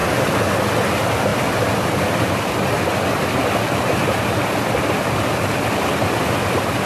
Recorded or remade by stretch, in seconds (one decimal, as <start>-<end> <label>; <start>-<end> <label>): 0.0-6.9 recorded